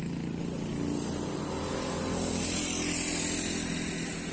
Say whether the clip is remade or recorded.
recorded